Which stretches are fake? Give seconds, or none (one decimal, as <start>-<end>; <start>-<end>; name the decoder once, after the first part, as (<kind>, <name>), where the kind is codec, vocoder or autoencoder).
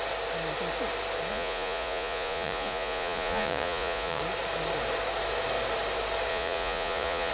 1.3-4.2 (vocoder, Vocos); 6.3-7.3